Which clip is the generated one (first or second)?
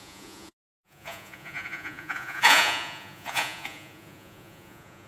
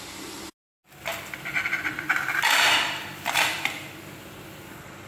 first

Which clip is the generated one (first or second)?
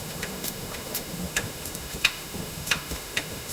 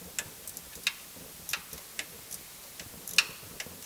first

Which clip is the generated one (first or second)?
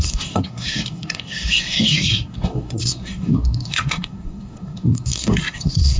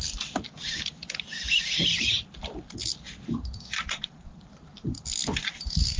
first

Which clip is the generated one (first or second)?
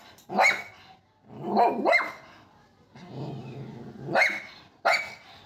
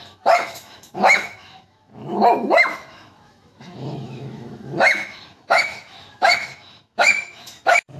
second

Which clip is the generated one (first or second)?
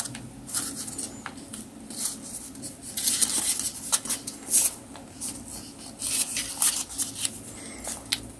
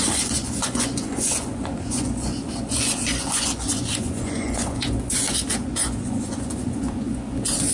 second